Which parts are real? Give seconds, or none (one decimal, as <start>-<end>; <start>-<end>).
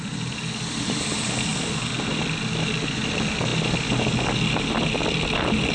0.0-5.7